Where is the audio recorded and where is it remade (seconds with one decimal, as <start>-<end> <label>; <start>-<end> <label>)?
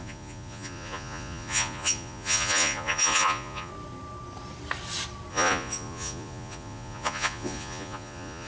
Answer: 0.0-3.7 remade; 3.7-5.3 recorded; 5.3-8.5 remade